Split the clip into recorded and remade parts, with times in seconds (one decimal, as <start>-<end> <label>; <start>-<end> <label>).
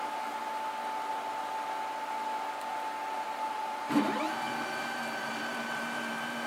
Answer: 0.0-0.4 remade; 0.4-3.5 recorded; 3.5-6.5 remade